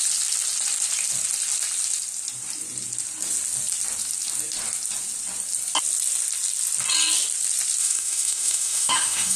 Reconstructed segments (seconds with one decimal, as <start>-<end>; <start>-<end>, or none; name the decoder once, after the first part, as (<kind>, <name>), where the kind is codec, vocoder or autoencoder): 7.8-9.4 (autoencoder, DAC-VAE)